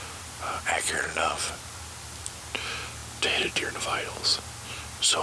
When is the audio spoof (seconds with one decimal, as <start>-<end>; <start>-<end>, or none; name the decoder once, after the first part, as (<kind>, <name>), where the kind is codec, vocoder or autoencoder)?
0.7-1.5 (vocoder, Vocos)

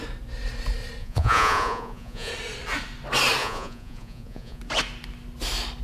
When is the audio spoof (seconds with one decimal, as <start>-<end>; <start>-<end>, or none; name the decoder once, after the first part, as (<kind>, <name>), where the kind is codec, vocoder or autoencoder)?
1.0-2.3 (vocoder, Vocos); 3.4-4.6